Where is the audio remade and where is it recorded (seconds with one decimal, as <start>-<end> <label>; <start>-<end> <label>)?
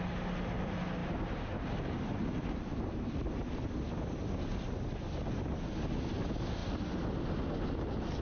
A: 0.0-8.2 recorded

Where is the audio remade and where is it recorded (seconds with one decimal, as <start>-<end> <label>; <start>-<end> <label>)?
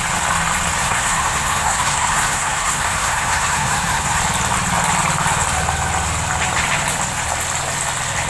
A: 0.0-0.8 recorded; 0.8-4.2 remade; 4.2-8.3 recorded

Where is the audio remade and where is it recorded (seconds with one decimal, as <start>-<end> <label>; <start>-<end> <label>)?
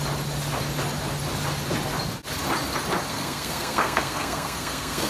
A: 0.0-3.1 recorded; 3.1-5.1 remade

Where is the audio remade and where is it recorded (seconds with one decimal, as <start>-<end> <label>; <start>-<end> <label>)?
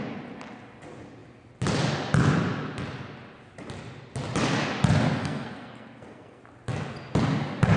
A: 0.0-5.2 recorded; 5.2-6.4 remade; 6.4-7.8 recorded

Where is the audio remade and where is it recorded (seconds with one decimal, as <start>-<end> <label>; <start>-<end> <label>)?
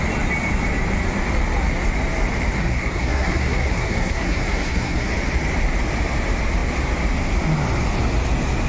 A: 0.0-2.6 recorded; 2.6-5.1 remade; 5.1-8.7 recorded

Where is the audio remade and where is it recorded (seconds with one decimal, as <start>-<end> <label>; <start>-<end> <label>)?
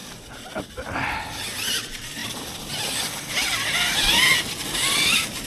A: 0.0-5.5 recorded